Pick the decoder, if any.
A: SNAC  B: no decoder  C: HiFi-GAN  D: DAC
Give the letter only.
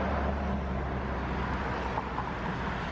B